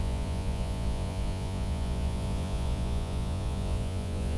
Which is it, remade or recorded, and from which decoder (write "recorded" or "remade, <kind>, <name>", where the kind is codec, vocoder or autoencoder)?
remade, vocoder, Vocos